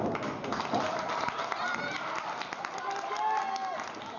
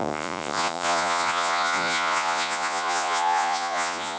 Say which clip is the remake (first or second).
second